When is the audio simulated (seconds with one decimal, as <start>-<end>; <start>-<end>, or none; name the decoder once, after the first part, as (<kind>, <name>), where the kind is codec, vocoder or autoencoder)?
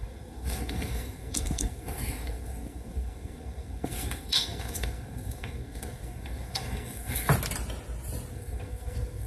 0.0-7.3 (codec, SNAC); 8.3-9.3